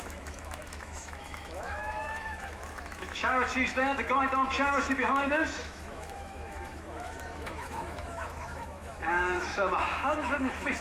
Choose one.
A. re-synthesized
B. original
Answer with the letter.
A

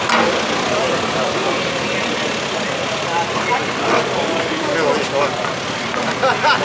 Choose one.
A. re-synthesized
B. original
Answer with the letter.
B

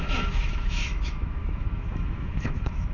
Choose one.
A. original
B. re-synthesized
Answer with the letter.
B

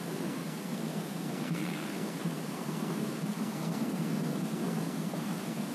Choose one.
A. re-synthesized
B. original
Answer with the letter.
A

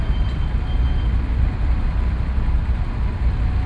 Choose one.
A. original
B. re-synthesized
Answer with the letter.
A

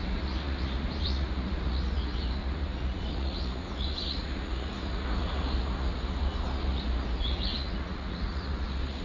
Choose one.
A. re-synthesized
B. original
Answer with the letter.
A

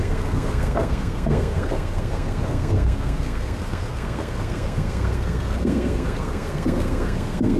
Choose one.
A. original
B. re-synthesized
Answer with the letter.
B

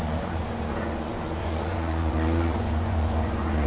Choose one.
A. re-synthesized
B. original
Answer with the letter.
A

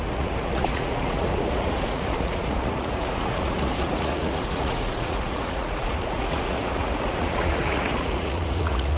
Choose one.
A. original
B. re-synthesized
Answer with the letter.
B